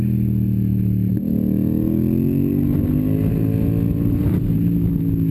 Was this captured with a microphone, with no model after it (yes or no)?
yes